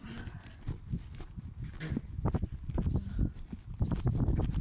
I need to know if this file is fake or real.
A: real